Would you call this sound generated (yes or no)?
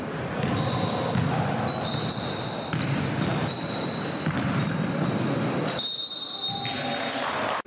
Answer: no